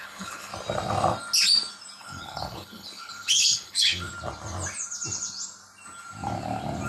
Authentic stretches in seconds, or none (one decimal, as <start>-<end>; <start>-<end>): 0.5-2.0; 4.1-6.9